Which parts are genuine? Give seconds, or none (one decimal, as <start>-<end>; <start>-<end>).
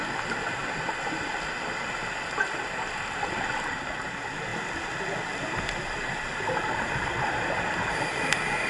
0.0-8.7